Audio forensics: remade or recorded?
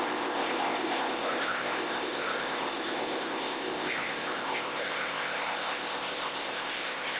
remade